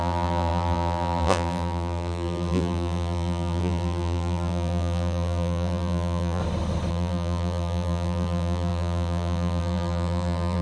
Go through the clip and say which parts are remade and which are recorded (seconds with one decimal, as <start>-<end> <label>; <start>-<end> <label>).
0.0-6.4 remade; 6.4-6.9 recorded; 6.9-10.6 remade